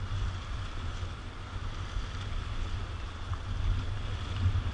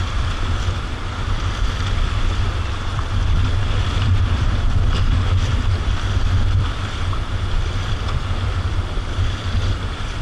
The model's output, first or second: second